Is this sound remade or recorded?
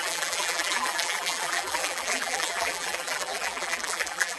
remade